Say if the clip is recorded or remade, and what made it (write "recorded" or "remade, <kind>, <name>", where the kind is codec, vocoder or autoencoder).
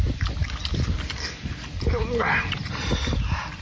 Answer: recorded